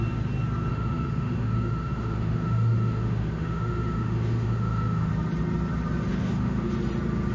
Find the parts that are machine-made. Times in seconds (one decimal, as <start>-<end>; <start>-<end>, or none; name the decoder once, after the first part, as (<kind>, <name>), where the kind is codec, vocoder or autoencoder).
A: 0.7-5.1 (autoencoder, DAC-VAE); 6.1-6.7